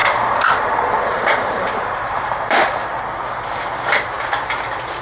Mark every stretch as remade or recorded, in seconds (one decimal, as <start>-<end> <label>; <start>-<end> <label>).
0.0-3.0 remade; 3.0-5.0 recorded